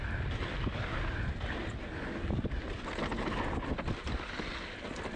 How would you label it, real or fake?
real